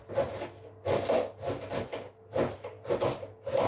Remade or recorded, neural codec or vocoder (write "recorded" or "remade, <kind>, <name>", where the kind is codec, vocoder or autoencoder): recorded